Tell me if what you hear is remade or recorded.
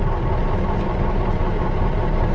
remade